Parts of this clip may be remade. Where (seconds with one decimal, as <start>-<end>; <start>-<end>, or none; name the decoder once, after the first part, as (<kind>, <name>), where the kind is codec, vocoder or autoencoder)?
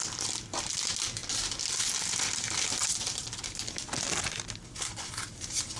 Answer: none